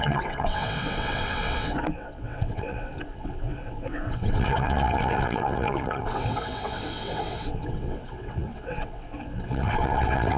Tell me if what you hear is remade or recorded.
remade